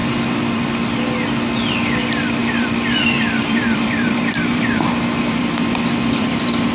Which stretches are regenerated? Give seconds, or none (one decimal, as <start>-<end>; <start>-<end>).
0.0-0.6; 2.4-6.7